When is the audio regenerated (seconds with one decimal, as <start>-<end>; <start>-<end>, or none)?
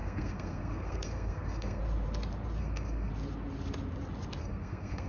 0.0-1.8; 2.6-3.1; 4.4-5.1